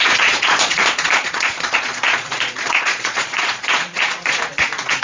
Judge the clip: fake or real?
fake